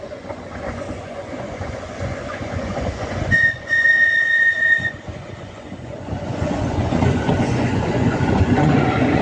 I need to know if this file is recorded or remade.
remade